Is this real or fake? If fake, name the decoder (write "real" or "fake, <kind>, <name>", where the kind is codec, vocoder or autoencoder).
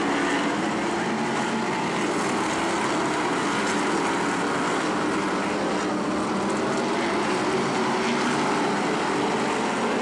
real